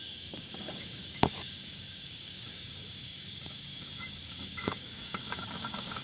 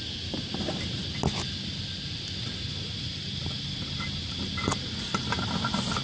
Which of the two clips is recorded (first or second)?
second